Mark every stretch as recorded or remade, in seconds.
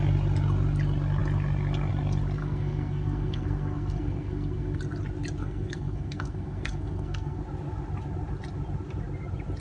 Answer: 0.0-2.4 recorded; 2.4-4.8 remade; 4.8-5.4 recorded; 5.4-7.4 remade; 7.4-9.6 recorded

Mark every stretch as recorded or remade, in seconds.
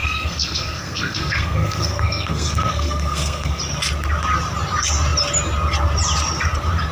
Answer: 0.0-3.6 remade; 3.6-6.9 recorded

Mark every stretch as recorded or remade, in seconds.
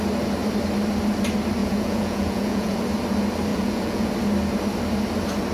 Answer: 0.0-1.6 recorded; 1.6-2.8 remade; 2.8-3.5 recorded; 3.5-4.1 remade; 4.1-5.5 recorded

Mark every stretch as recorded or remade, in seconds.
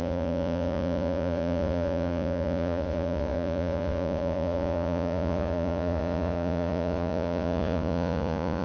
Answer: 0.0-8.6 remade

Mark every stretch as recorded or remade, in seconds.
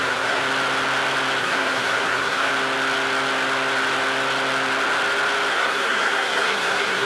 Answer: 0.0-0.4 remade; 0.4-1.4 recorded; 1.4-2.5 remade; 2.5-5.5 recorded; 5.5-7.0 remade